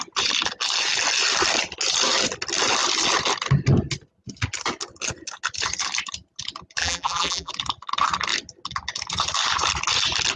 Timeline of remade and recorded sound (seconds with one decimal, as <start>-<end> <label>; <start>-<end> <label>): 0.0-6.8 recorded; 6.8-7.5 remade; 7.5-10.4 recorded